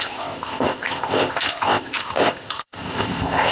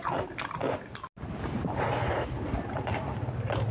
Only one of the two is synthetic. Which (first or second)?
first